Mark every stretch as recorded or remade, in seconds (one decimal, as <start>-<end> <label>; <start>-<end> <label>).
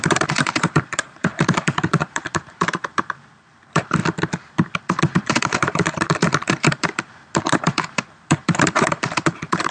0.0-4.0 remade; 4.0-4.8 recorded; 4.8-9.7 remade